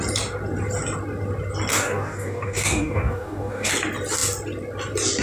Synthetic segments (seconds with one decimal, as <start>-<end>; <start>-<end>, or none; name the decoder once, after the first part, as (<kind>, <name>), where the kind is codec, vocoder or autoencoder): 1.7-3.7 (codec, DAC)